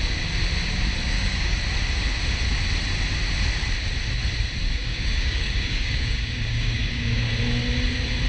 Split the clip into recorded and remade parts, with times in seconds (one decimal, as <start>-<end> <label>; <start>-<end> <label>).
0.0-1.0 recorded; 1.0-1.6 remade; 1.6-4.6 recorded; 4.6-7.3 remade; 7.3-8.3 recorded